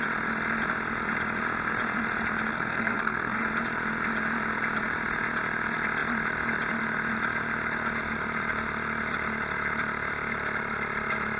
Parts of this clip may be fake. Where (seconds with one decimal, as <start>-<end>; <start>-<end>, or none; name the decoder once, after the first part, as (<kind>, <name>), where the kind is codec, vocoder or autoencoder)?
2.5-3.4 (codec, SNAC)